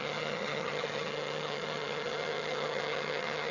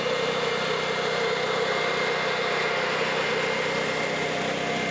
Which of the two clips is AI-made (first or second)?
first